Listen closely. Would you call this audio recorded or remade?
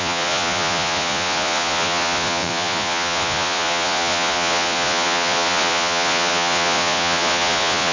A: remade